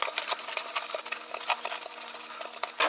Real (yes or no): yes